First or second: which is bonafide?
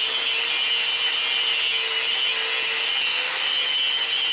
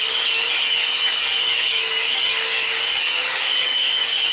first